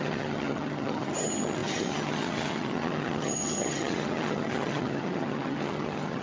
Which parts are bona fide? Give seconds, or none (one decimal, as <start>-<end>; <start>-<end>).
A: none